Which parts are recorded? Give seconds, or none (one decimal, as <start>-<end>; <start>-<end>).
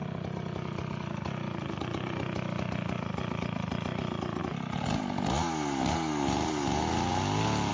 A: 0.0-7.7